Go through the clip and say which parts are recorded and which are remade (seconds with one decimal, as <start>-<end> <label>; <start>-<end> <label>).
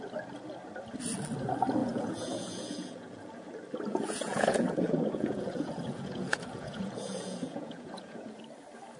0.0-1.8 recorded; 1.8-3.5 remade; 3.5-3.9 recorded; 3.9-8.4 remade; 8.4-9.0 recorded